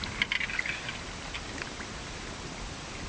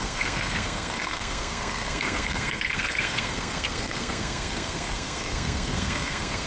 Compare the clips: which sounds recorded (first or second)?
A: first